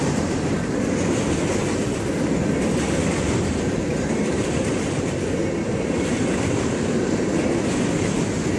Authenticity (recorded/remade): recorded